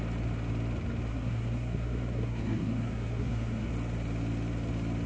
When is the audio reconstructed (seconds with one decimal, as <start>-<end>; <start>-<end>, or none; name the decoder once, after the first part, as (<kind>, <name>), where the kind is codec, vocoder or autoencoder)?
1.1-3.7 (codec, SNAC)